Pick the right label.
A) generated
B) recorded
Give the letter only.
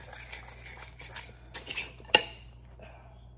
B